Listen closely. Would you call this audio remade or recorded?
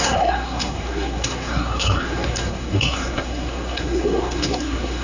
remade